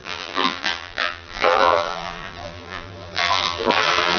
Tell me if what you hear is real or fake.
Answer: fake